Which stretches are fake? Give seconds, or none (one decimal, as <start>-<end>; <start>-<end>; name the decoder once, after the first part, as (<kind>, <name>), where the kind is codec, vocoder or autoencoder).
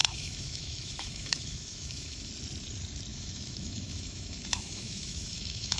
0.0-2.3 (autoencoder, DAC-VAE); 3.1-5.8